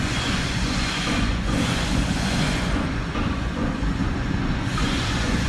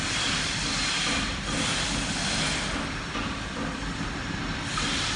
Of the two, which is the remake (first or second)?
first